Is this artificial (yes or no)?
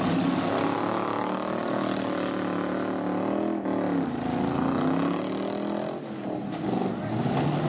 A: no